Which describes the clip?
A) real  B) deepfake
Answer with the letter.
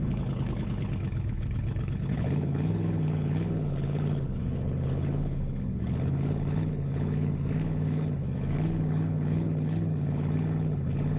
B